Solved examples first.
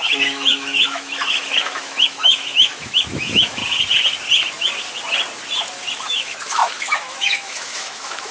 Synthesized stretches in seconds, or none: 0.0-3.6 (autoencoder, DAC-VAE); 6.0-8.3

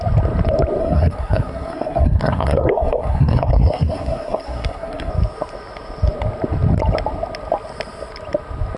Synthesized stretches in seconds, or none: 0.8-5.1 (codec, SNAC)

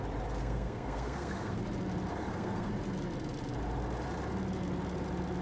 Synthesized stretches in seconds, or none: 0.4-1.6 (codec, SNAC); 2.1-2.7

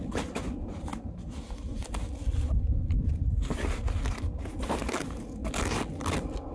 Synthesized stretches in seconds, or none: 0.0-0.9 (vocoder, BigVGAN v2); 4.5-5.4

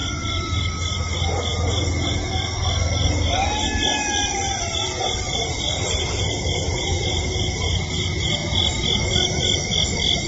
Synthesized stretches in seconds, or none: 0.0-1.5 (vocoder, BigVGAN v2); 4.2-7.0; 8.4-10.3

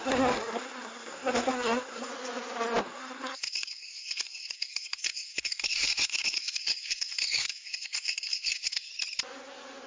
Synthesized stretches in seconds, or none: 0.0-2.1 (codec, SNAC); 2.8-8.9

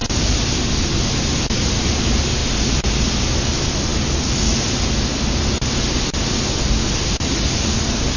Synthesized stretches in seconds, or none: none